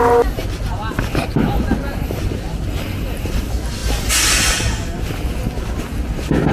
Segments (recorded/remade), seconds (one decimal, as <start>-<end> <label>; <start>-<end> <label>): 0.0-6.5 recorded